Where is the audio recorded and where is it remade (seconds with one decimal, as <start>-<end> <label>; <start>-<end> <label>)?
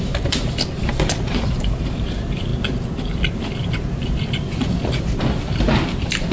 0.0-2.5 remade; 2.5-3.3 recorded; 3.3-6.3 remade